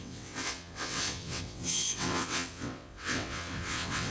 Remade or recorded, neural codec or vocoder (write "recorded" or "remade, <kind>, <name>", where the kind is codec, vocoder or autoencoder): remade, vocoder, WaveNeXt